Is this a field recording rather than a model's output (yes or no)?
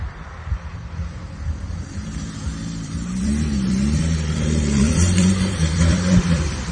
no